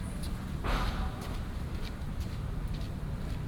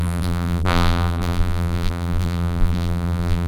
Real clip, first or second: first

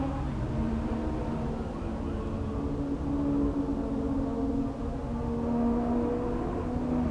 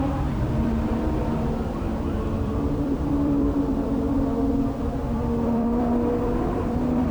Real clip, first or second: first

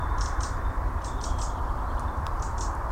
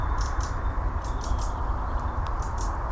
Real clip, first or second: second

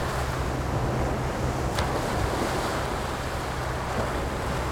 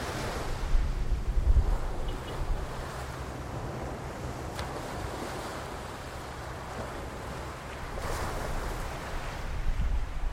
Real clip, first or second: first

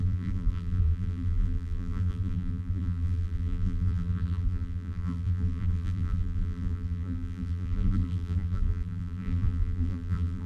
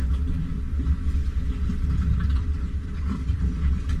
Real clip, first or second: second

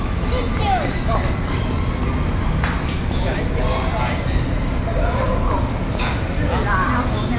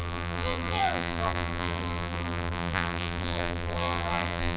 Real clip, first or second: first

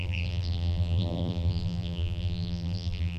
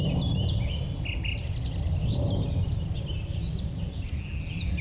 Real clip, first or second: second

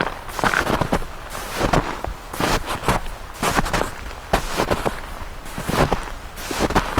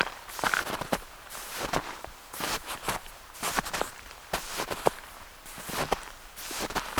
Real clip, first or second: first